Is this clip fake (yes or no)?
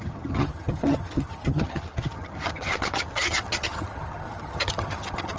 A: yes